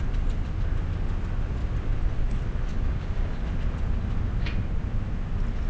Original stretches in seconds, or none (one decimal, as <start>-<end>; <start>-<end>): 0.0-2.7; 3.4-5.7